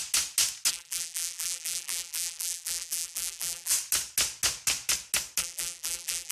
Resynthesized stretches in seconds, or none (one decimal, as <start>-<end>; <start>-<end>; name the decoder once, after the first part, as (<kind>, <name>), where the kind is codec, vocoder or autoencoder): 0.7-3.7 (vocoder, BigVGAN v2); 5.4-6.3